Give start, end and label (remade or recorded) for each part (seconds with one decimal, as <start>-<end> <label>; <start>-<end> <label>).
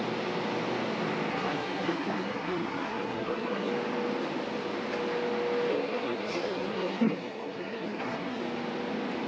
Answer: 0.0-1.3 recorded; 1.3-3.7 remade; 3.7-5.7 recorded; 5.7-8.4 remade; 8.4-9.3 recorded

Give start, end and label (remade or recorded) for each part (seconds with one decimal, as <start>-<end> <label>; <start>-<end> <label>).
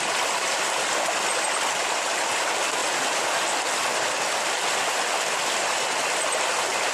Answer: 0.0-6.9 recorded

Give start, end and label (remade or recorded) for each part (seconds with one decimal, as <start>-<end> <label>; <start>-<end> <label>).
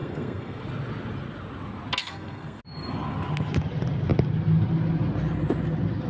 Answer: 0.0-0.6 remade; 0.6-2.0 recorded; 2.0-2.6 remade; 2.6-6.1 recorded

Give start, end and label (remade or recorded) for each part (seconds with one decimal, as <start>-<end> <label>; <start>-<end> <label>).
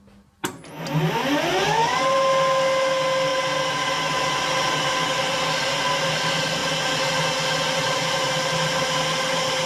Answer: 0.0-9.7 recorded